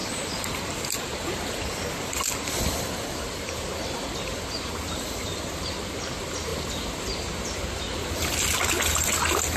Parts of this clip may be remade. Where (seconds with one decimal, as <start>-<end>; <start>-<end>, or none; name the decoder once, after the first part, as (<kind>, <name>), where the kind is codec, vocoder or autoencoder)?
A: none